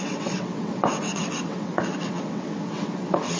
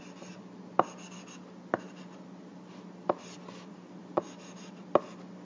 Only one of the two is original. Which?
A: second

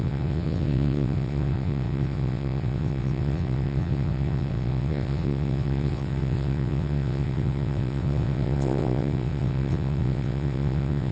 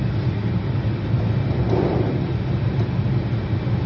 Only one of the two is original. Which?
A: second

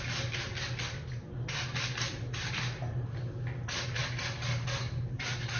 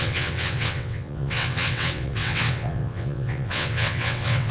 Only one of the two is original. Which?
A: first